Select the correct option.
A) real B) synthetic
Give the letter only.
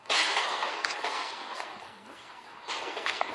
B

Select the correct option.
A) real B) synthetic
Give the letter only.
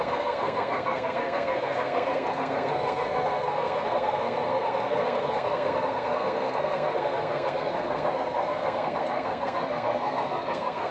B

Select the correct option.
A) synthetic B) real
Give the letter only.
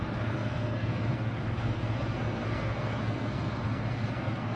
A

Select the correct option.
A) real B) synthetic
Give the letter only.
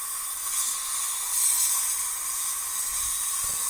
A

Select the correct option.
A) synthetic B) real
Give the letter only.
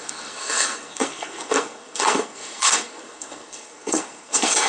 A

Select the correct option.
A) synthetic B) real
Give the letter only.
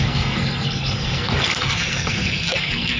A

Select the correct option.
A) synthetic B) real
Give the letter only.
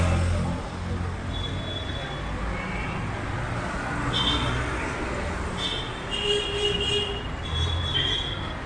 B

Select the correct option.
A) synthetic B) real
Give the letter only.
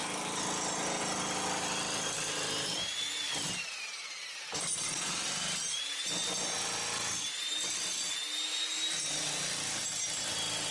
B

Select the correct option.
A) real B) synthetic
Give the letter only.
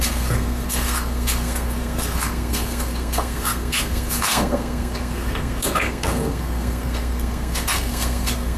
B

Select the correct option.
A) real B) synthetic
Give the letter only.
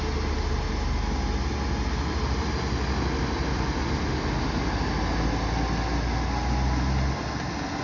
A